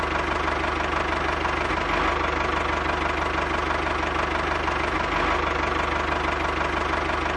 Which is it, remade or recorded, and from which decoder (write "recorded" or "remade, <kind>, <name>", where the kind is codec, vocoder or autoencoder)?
recorded